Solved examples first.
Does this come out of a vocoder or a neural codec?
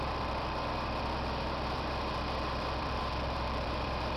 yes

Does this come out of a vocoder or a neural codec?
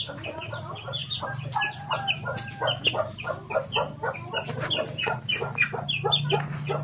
no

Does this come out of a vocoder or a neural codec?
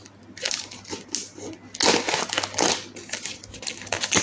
no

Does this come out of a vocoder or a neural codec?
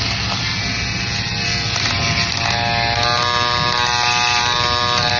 no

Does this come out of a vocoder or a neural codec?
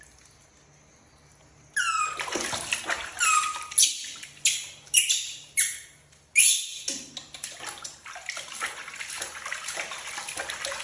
no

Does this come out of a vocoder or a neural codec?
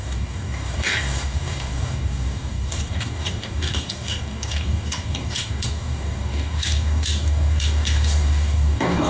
yes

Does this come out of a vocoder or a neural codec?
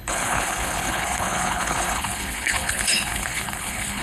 yes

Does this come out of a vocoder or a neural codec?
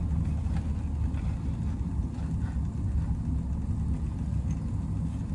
no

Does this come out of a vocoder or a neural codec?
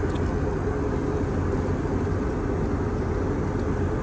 no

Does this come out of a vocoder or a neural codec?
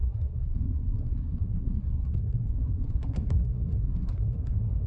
yes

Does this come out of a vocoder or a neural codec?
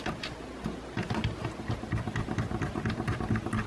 no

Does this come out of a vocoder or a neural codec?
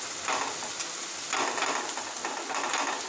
no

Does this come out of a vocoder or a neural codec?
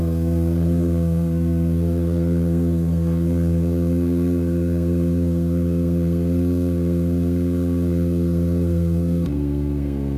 yes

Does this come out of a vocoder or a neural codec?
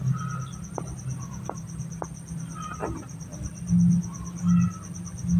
no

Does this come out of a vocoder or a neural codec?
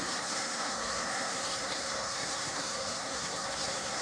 yes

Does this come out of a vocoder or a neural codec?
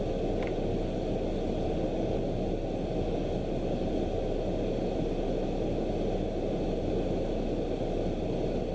no